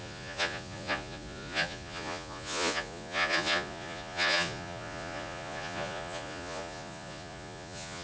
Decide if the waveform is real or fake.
fake